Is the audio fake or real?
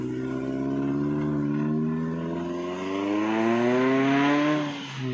real